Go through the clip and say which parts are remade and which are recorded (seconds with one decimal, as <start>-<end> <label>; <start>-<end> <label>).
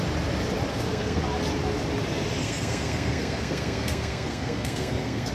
0.0-0.7 recorded; 0.7-1.2 remade; 1.2-2.4 recorded; 2.4-5.3 remade